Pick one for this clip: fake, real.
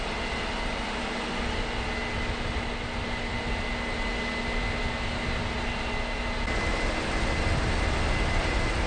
real